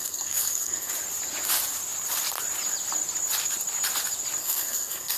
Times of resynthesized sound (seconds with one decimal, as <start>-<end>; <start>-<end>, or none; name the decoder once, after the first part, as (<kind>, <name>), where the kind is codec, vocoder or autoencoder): 0.0-0.9 (codec, SNAC); 4.4-5.2